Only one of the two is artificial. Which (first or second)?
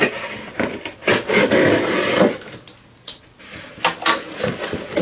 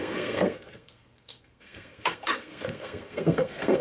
second